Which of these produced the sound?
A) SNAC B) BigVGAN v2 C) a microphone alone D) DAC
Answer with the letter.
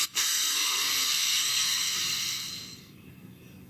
A